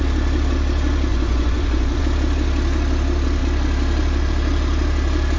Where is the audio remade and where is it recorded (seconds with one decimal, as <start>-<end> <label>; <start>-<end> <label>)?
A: 0.0-1.1 recorded; 1.1-2.0 remade; 2.0-5.4 recorded